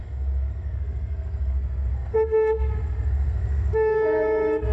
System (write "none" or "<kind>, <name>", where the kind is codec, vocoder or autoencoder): codec, SNAC